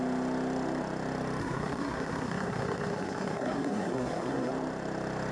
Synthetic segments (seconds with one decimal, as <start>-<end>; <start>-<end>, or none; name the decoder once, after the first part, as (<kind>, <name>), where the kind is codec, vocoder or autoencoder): 1.4-4.5 (codec, SNAC)